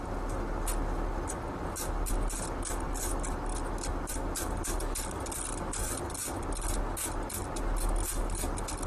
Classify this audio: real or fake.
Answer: real